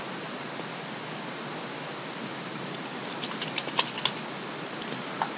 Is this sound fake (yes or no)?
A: no